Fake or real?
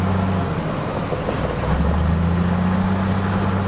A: real